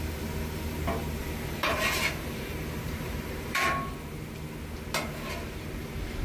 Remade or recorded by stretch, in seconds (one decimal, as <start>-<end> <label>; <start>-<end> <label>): 0.0-1.2 recorded; 1.2-3.9 remade; 3.9-6.2 recorded